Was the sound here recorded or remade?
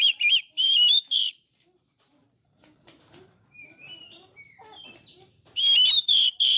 remade